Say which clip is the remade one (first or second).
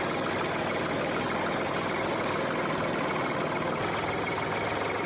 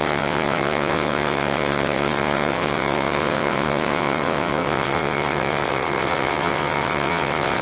second